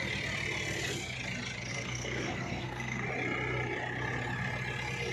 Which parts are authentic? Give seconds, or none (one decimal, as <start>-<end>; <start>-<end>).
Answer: 0.0-1.7; 3.1-5.1